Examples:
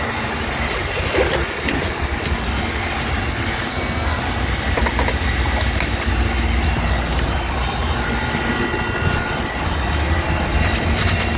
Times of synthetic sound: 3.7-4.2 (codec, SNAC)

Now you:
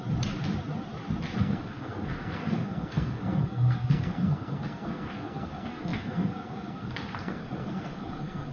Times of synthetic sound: 1.4-8.5 (codec, SNAC)

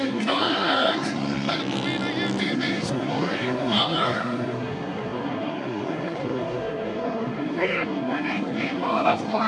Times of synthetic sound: 0.0-1.6 (codec, SNAC); 2.4-9.5

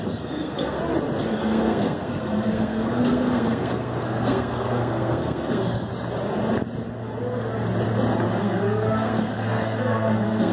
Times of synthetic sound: 0.0-0.8 (codec, SNAC); 1.4-5.9; 8.4-10.5

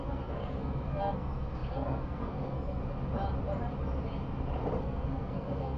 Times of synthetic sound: 0.0-2.8 (codec, SNAC); 4.8-5.8

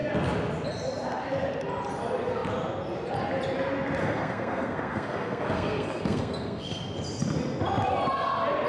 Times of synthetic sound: 4.0-6.8 (codec, SNAC)